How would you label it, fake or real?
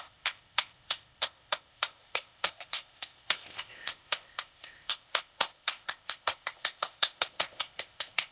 fake